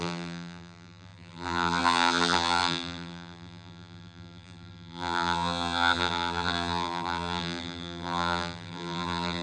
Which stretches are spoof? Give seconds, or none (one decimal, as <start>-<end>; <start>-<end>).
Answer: 0.0-9.4